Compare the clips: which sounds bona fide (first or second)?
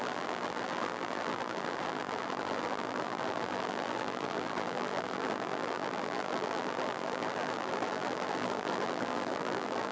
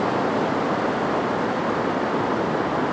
second